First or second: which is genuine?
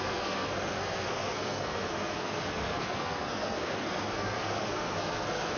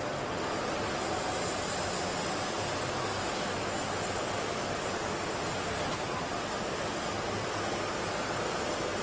second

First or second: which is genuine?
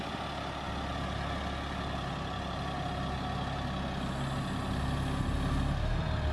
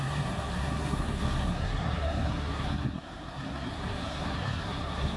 first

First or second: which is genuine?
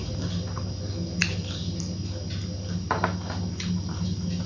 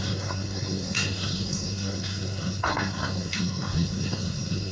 first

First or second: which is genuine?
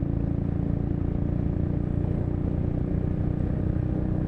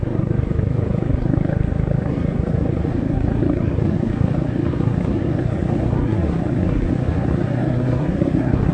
first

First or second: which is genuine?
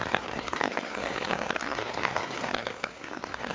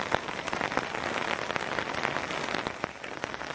second